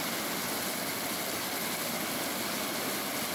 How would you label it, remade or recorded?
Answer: recorded